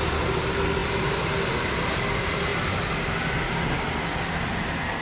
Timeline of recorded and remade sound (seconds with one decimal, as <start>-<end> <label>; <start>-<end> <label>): 0.0-5.0 recorded